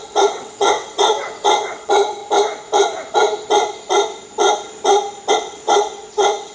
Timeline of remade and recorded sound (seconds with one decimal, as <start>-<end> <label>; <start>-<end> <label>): 0.0-2.2 remade; 2.2-5.3 recorded; 5.3-6.5 remade

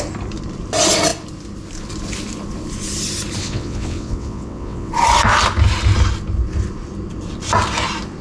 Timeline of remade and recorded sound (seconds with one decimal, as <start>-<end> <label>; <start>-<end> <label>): 0.0-3.4 recorded; 3.4-4.9 remade; 4.9-8.2 recorded

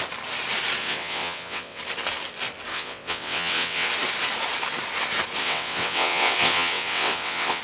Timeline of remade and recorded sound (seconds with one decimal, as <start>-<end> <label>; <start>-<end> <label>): 0.0-0.8 recorded; 0.8-1.8 remade; 1.8-2.7 recorded; 2.7-3.9 remade; 3.9-5.4 recorded; 5.4-7.6 remade

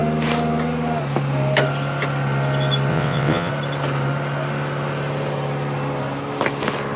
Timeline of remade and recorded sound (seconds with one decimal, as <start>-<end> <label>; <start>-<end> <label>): 0.0-2.9 recorded; 2.9-3.5 remade; 3.5-7.0 recorded

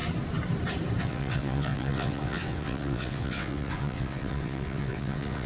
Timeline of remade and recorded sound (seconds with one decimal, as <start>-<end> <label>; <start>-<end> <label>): 0.0-1.0 recorded; 1.0-5.5 remade

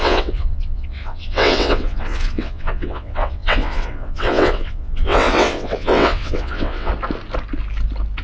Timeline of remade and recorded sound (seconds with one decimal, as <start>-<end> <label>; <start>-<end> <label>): 0.0-6.9 remade; 6.9-8.2 recorded